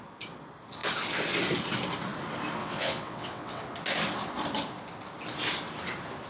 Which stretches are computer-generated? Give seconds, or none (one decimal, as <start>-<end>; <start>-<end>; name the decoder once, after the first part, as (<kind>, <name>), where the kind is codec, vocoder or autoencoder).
2.6-3.6 (vocoder, WaveNeXt)